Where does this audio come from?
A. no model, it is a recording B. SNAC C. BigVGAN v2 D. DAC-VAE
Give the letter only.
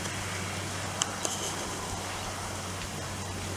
A